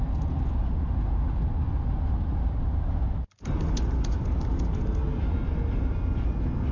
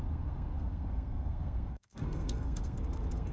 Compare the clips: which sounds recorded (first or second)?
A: first